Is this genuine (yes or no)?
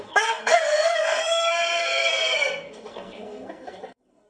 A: no